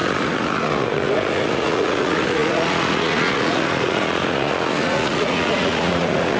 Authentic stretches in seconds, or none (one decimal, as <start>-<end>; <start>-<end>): none